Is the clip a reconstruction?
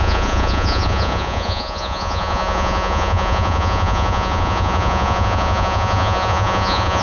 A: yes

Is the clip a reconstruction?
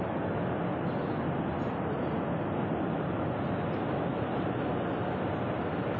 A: no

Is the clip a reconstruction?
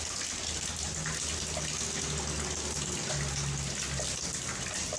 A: no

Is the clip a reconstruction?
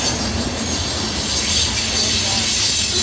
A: no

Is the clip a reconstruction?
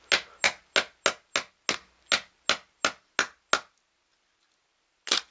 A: no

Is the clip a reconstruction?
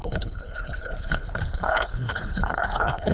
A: yes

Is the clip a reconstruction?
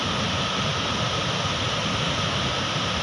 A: no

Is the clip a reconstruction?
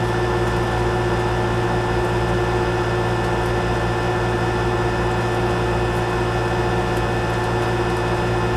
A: no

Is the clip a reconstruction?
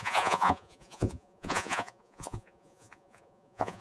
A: yes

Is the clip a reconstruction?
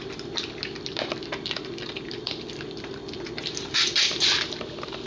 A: no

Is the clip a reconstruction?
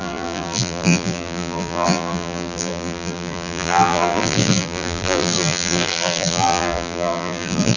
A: yes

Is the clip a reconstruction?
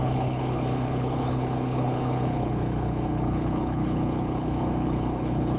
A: yes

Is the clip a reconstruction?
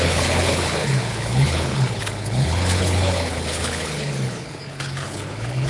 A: yes